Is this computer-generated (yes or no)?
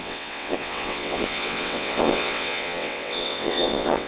yes